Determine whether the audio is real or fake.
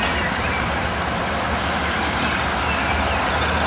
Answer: real